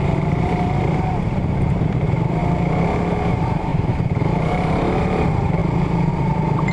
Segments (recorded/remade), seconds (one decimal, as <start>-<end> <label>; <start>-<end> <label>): 0.0-2.4 remade; 2.4-3.3 recorded; 3.3-5.6 remade; 5.6-6.1 recorded; 6.1-6.7 remade